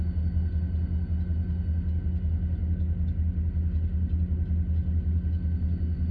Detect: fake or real real